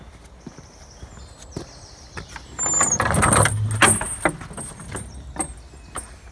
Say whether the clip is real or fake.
real